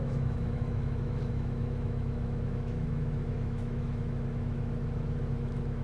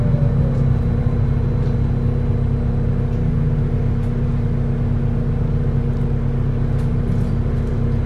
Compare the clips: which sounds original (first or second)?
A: second